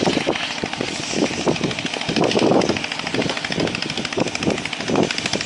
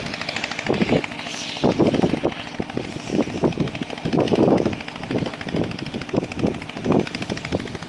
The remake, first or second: first